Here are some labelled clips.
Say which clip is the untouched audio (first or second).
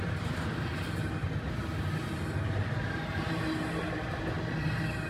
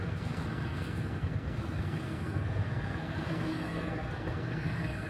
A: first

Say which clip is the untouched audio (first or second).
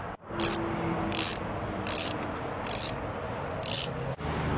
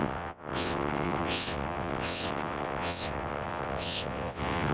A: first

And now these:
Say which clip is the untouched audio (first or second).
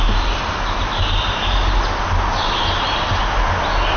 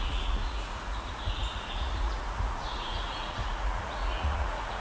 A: first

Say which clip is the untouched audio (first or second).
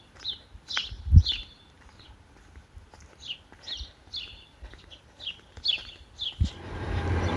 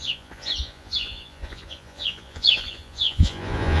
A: first